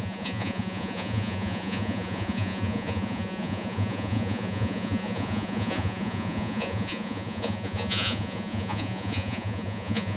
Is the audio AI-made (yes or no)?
yes